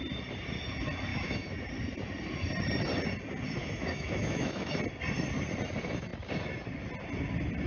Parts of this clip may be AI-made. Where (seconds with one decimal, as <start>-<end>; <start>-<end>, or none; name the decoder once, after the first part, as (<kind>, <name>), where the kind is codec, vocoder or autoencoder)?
1.1-1.7 (autoencoder, DAC-VAE); 3.6-4.8